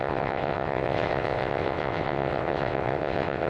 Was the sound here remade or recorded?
remade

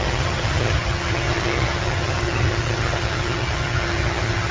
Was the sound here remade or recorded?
remade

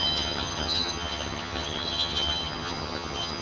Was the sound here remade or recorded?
remade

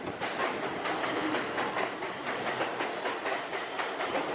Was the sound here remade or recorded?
recorded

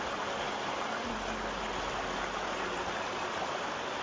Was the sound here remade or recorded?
recorded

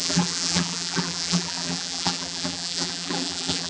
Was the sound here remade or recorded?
remade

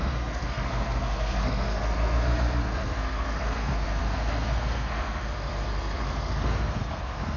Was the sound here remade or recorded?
remade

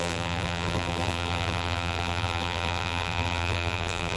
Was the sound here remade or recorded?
remade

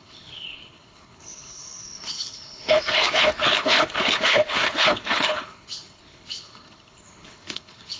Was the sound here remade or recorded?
remade